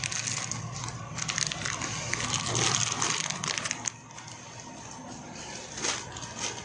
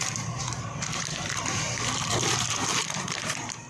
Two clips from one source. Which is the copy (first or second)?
second